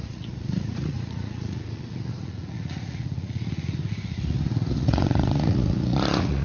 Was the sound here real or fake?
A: fake